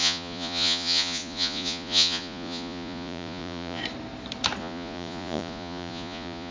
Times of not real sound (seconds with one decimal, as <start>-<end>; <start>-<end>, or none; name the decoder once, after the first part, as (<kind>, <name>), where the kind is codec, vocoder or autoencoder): 0.0-3.8 (vocoder, Vocos); 4.6-6.5